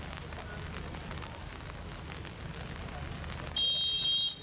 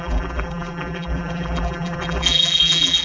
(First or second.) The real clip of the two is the first